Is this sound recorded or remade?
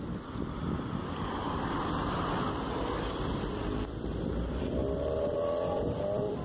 remade